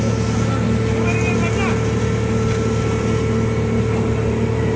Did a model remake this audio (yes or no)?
no